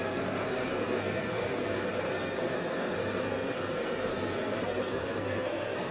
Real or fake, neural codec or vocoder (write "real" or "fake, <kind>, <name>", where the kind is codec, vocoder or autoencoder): fake, codec, SNAC